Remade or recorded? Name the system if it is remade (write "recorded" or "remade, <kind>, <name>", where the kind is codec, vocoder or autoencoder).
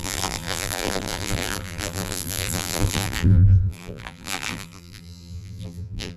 remade, vocoder, BigVGAN v2